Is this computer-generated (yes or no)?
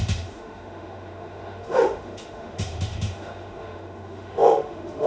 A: yes